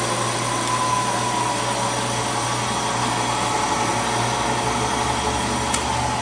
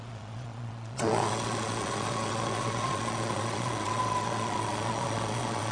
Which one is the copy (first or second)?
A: second